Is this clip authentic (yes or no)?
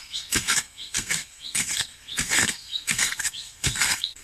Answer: no